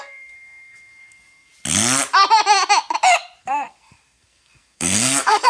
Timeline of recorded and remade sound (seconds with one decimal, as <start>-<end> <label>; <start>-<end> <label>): 0.0-1.5 remade; 1.5-3.4 recorded; 3.4-5.5 remade